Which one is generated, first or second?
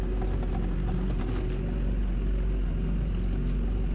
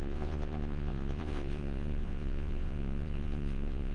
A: second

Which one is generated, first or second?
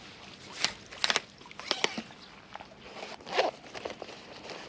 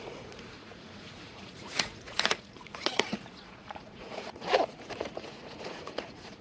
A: second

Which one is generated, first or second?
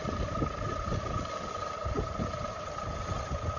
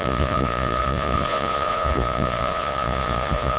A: second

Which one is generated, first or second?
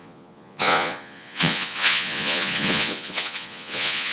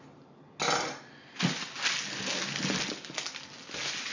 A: first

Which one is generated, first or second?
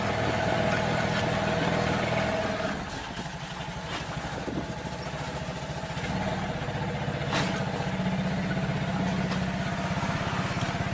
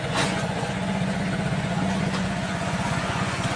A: second